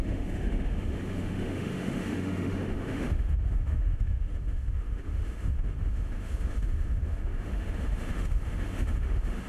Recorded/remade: remade